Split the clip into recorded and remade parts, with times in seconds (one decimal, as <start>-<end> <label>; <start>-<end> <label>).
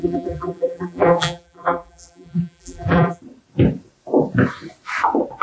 0.0-3.2 remade; 3.2-5.4 recorded